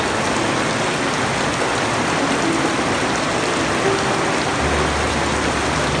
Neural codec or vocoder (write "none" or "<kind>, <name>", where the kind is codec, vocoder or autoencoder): none